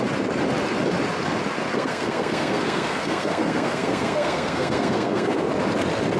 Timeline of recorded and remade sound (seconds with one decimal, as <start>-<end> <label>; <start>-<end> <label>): 0.0-1.7 recorded; 1.7-5.4 remade; 5.4-6.2 recorded